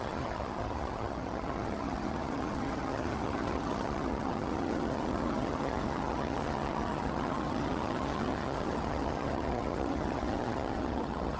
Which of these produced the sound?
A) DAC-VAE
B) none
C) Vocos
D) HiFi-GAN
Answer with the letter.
D